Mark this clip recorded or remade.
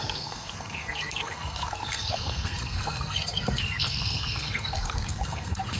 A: remade